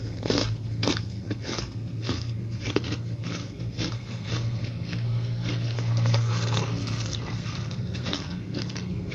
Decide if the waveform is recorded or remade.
remade